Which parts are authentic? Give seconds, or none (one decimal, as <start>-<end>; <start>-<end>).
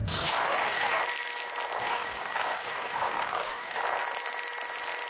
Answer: 1.0-1.8; 3.8-5.1